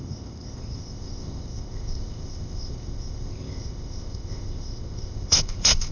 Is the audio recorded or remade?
remade